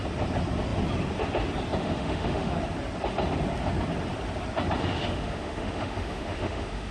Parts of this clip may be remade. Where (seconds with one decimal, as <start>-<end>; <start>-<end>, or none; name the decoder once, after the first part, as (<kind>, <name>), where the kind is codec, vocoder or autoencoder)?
1.8-2.5 (autoencoder, DAC-VAE); 4.8-6.9